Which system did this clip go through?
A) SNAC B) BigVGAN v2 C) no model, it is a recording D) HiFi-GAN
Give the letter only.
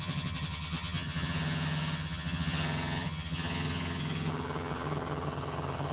D